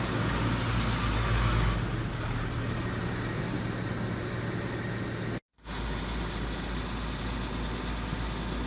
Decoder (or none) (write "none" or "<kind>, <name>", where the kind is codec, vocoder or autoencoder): none